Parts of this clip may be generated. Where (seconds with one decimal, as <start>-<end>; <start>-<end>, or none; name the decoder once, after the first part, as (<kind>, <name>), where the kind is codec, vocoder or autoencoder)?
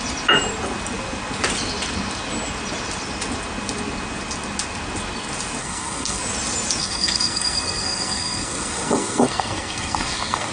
5.6-6.2 (codec, SNAC); 6.8-10.5